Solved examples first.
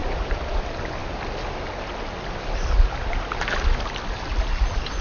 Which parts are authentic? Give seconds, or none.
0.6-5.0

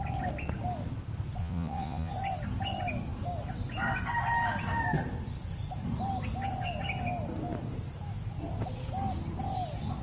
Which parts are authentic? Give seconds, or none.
0.0-1.4; 2.1-10.0

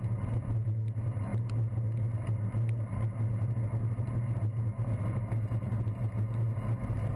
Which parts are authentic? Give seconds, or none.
0.0-7.2

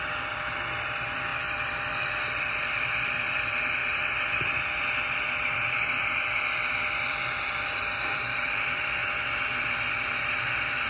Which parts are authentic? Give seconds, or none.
3.8-5.1; 9.0-10.2

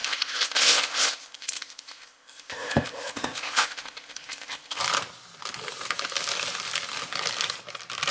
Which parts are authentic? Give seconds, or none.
4.8-8.1